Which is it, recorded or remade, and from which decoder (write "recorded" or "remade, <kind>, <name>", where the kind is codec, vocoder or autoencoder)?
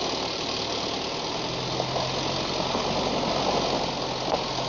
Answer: recorded